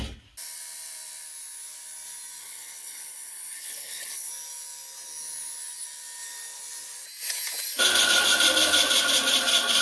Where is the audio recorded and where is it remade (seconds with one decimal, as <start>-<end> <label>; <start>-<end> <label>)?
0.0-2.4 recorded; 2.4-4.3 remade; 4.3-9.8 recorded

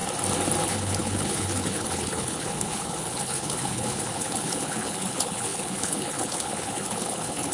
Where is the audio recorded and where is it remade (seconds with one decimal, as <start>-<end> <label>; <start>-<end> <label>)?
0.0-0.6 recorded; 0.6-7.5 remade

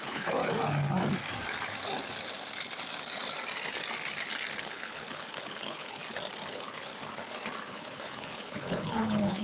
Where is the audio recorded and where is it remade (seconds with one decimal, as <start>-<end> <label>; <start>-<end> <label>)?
0.0-0.4 remade; 0.4-4.6 recorded; 4.6-6.0 remade; 6.0-6.5 recorded; 6.5-6.9 remade; 6.9-7.7 recorded; 7.7-9.4 remade

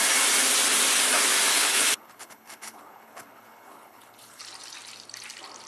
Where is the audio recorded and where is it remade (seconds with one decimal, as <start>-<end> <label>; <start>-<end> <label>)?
0.0-1.5 recorded; 1.5-4.4 remade; 4.4-5.7 recorded

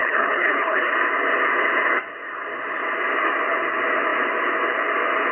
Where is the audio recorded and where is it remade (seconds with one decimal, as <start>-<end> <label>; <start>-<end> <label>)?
0.0-0.9 remade; 0.9-5.3 recorded

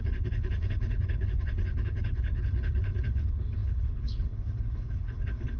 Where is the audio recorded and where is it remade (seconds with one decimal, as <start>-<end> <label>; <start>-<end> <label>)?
0.0-5.6 remade